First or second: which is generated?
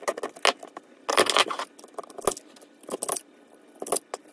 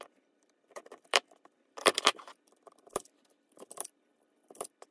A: second